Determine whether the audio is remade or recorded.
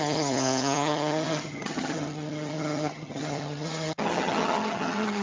remade